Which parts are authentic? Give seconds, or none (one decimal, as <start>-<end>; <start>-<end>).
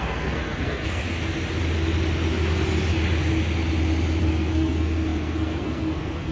1.0-4.2